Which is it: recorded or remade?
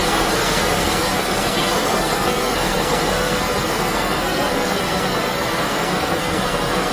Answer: remade